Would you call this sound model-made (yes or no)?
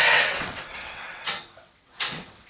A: yes